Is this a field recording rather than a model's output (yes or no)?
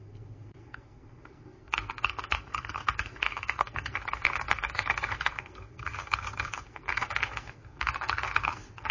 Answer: no